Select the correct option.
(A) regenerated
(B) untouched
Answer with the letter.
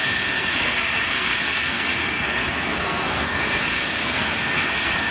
A